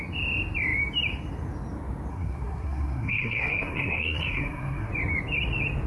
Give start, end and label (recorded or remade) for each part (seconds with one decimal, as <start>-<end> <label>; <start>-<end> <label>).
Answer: 0.0-2.1 recorded; 2.1-4.9 remade; 4.9-5.9 recorded